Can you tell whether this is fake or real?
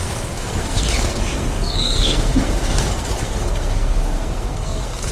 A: fake